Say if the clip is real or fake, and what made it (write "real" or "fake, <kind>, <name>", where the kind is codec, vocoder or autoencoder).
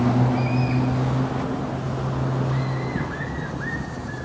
real